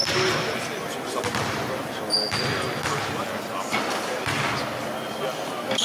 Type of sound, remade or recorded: recorded